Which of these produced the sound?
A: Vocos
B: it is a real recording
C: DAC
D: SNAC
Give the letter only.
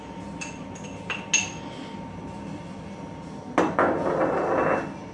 B